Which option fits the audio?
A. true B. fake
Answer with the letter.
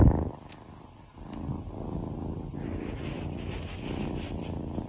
A